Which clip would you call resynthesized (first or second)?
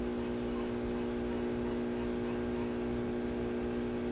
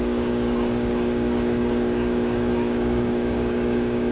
second